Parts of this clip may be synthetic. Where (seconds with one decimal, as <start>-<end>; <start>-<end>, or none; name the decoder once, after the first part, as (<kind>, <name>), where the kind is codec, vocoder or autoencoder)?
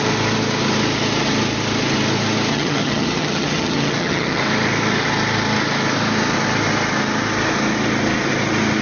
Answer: 2.5-4.4 (vocoder, HiFi-GAN)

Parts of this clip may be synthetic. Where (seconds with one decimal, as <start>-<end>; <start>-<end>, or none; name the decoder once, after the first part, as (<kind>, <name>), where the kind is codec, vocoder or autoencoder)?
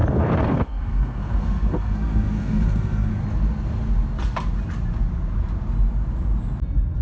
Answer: 0.0-3.1 (codec, SNAC)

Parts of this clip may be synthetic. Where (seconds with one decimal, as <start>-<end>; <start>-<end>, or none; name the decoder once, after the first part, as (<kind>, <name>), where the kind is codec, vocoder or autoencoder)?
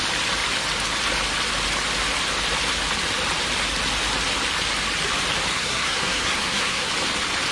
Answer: 5.5-6.9 (codec, SNAC)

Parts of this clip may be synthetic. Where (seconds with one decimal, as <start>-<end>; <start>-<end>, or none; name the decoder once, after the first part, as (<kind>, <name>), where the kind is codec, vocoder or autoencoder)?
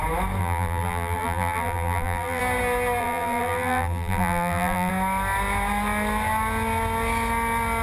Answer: 0.4-2.4 (vocoder, BigVGAN v2); 3.0-4.9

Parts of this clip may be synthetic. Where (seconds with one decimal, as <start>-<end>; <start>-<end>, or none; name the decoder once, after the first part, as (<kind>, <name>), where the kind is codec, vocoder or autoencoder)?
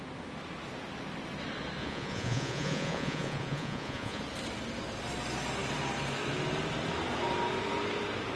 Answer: 1.8-4.2 (vocoder, Vocos)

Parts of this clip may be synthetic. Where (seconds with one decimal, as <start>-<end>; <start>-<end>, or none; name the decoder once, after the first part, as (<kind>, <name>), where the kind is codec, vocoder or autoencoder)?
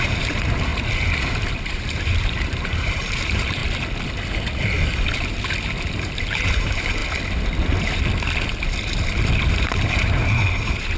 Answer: 0.0-0.7 (vocoder, BigVGAN v2); 1.5-3.6; 5.8-7.0; 9.5-11.0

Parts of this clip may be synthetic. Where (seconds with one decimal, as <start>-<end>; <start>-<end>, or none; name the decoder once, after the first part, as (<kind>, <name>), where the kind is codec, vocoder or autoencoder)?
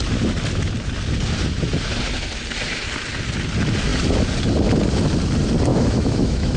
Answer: 5.7-6.6 (autoencoder, DAC-VAE)